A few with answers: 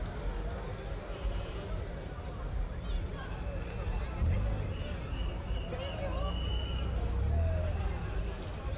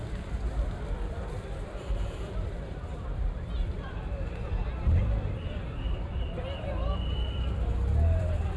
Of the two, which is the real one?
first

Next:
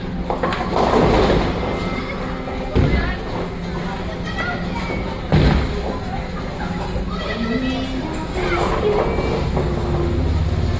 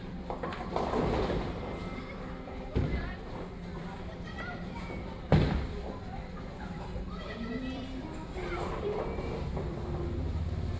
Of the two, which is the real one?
first